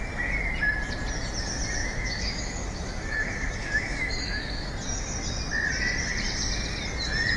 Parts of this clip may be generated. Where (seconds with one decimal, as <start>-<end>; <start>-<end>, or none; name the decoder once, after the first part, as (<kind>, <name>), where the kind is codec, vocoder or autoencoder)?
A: 1.8-4.7 (autoencoder, DAC-VAE)